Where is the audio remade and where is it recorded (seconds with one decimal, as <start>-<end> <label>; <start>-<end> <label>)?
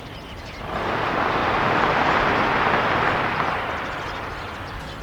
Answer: 0.0-5.0 recorded